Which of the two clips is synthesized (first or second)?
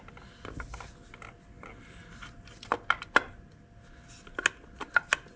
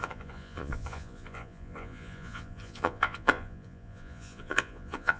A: second